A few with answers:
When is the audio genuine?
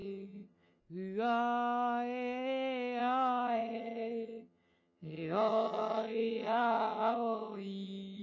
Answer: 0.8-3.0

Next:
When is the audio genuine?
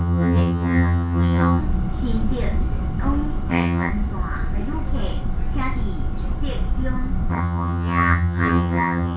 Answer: 1.6-3.5; 3.9-7.3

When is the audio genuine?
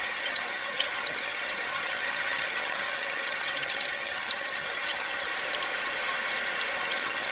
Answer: 5.3-6.8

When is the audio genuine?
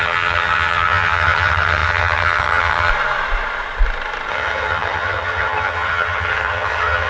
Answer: 2.9-4.3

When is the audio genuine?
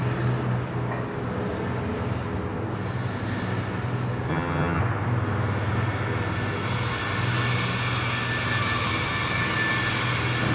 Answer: 0.0-4.3; 4.8-10.5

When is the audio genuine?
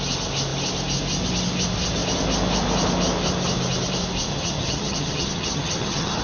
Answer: 0.0-4.3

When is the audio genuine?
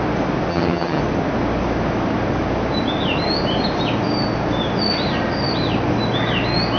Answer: 0.0-0.5; 1.0-6.8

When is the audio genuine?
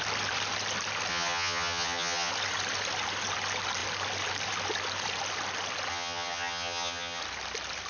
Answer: 0.0-1.1; 2.3-5.9; 7.2-7.9